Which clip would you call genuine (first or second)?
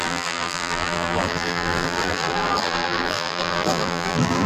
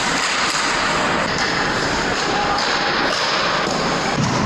second